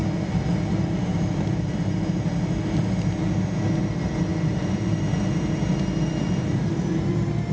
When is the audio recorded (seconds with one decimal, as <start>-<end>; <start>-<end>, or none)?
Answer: 0.0-0.7; 2.3-3.8